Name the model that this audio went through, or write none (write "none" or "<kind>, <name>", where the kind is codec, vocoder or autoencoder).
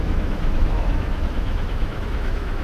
autoencoder, DAC-VAE